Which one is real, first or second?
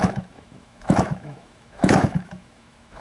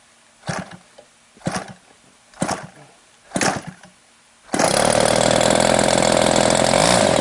second